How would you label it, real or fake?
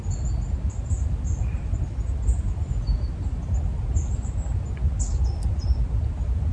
real